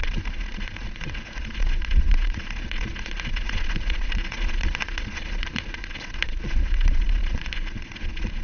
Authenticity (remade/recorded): remade